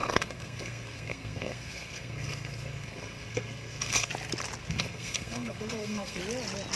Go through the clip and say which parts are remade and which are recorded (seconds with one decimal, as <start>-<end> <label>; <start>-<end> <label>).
0.0-4.1 remade; 4.1-4.6 recorded; 4.6-6.2 remade; 6.2-6.8 recorded